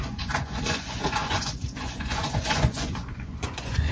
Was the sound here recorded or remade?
remade